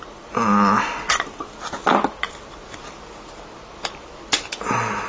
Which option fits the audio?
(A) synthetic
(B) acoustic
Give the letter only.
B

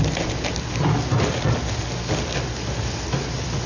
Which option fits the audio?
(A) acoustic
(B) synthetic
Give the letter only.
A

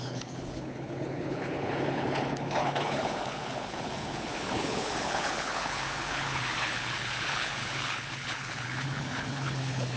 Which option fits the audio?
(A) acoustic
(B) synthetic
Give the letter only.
B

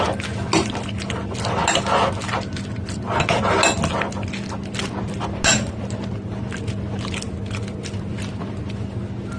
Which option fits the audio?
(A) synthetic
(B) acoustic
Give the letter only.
B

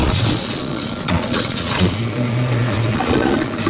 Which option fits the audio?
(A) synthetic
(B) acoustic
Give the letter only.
A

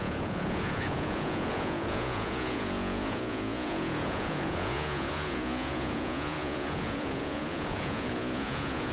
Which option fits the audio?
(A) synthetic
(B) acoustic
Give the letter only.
A